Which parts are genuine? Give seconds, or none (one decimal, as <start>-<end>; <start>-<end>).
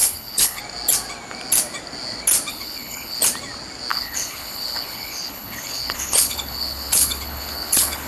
0.6-2.5; 3.2-3.9